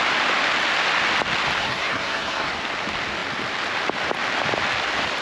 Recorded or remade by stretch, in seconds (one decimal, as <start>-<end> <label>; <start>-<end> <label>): 0.0-1.6 recorded; 1.6-2.5 remade; 2.5-5.2 recorded